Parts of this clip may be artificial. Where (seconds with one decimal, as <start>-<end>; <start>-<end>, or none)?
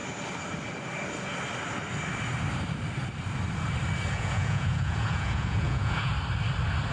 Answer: 4.1-6.1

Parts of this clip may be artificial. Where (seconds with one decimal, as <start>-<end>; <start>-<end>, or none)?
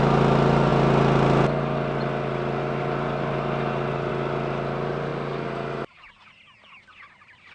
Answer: none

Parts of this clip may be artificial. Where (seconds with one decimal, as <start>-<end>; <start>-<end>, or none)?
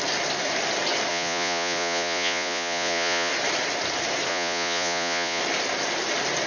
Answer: 1.1-3.3; 4.3-5.4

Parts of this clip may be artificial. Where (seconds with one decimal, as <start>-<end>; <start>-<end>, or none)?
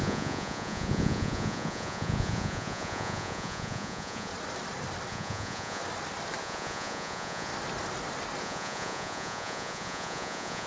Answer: 0.0-4.3; 5.1-5.8; 6.4-7.5; 8.4-10.7